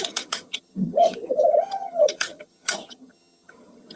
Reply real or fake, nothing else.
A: fake